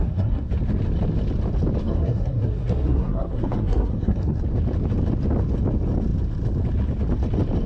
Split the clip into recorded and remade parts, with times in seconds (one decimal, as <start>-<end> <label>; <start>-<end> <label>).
0.0-0.5 remade; 0.5-1.8 recorded; 1.8-4.4 remade; 4.4-7.7 recorded